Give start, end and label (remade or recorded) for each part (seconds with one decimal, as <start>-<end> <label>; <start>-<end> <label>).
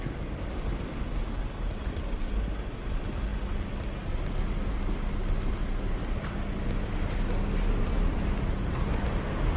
0.0-9.6 recorded